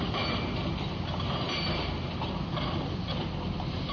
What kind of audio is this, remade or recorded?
recorded